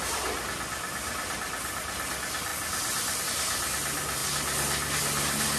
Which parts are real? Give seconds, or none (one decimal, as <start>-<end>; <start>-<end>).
0.0-5.6